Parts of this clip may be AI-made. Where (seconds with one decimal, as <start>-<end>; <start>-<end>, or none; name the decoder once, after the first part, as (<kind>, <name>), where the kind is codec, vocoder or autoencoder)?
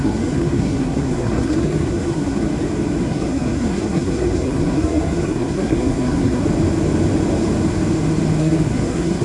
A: 0.0-2.5 (codec, SNAC); 3.0-6.4; 8.4-9.2